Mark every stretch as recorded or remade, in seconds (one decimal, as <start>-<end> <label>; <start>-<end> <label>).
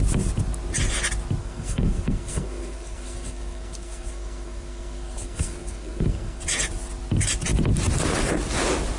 0.0-1.4 recorded; 1.4-6.4 remade; 6.4-9.0 recorded